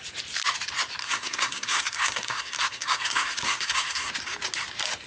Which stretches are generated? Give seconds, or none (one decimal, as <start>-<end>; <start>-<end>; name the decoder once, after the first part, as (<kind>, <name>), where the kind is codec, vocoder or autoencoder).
1.0-4.1 (codec, SNAC)